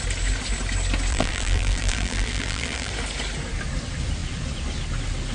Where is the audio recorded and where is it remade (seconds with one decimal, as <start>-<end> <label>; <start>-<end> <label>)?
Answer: 0.0-1.1 recorded; 1.1-2.9 remade; 2.9-5.3 recorded